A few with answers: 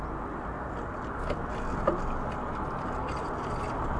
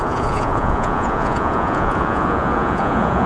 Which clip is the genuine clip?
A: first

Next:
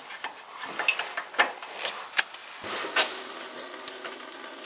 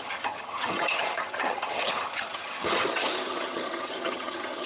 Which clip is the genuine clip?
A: first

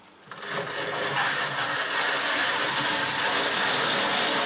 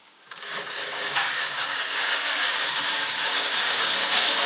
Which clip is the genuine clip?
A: first